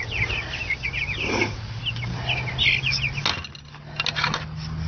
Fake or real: real